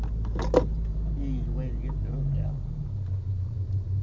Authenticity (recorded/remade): recorded